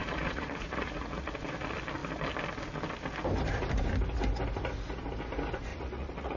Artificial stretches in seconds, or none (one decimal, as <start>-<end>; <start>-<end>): 0.0-1.3; 5.7-6.4